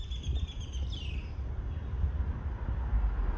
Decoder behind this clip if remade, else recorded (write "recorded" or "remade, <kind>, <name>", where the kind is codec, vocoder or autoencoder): recorded